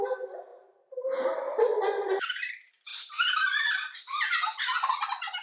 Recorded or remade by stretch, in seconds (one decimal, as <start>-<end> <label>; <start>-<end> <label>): 0.0-0.5 recorded; 0.5-2.5 remade; 2.5-5.4 recorded